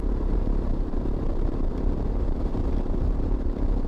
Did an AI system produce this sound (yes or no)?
yes